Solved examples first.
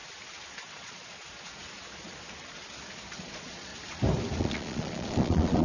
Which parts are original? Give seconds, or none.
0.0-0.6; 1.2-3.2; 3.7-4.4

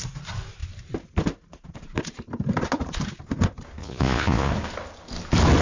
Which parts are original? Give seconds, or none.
0.0-3.8; 4.5-5.6

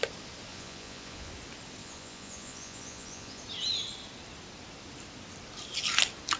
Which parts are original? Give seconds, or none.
0.0-0.5; 1.3-1.8; 3.4-6.4

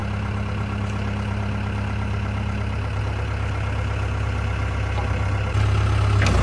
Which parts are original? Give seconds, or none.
0.0-6.4

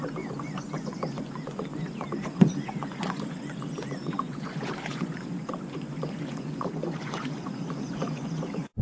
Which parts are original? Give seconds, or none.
none

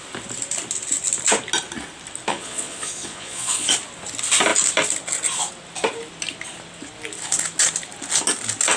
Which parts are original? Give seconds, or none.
0.0-2.3; 3.7-8.8

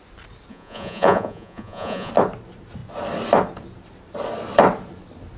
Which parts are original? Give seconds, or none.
0.0-0.5; 2.1-5.4

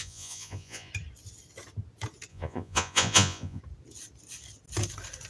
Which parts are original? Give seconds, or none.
0.9-2.3; 3.6-5.3